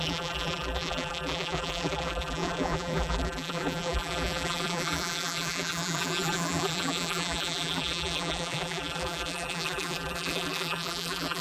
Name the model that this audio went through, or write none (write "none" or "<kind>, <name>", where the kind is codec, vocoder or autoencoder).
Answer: vocoder, BigVGAN v2